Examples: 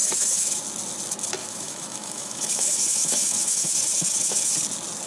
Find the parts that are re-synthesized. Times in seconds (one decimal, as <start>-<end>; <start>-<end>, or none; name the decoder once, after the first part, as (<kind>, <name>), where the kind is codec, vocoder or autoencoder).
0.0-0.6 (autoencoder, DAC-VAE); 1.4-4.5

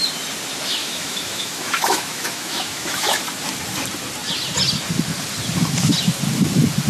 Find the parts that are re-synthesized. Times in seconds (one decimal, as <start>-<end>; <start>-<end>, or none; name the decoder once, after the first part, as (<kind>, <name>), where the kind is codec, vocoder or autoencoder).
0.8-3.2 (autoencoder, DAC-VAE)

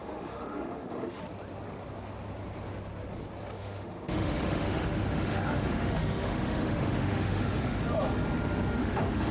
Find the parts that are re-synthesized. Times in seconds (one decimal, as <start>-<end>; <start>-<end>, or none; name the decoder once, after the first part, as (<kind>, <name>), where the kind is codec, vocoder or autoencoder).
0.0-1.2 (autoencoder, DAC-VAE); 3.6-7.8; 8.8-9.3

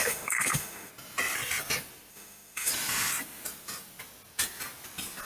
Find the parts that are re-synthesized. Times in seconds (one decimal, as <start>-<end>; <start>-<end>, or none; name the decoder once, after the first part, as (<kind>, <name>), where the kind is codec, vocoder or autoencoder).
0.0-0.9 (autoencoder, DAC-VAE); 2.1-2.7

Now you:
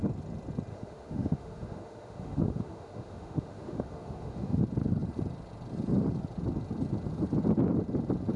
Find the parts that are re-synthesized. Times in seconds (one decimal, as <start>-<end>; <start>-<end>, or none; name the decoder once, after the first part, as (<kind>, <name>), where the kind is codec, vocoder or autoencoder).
0.7-4.6 (autoencoder, DAC-VAE)

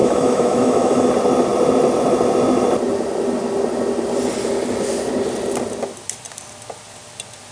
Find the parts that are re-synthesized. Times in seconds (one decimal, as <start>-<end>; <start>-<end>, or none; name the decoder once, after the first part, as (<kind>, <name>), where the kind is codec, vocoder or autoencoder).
0.0-1.1 (autoencoder, DAC-VAE)

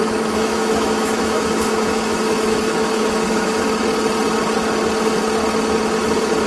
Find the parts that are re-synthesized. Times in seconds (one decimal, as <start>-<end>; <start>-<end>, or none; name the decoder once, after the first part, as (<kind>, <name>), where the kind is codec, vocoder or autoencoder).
0.0-3.6 (autoencoder, DAC-VAE)

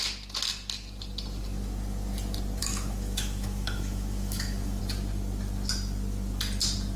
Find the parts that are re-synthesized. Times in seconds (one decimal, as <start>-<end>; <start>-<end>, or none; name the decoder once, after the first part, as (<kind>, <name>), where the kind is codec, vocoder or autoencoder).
2.6-4.8 (autoencoder, DAC-VAE)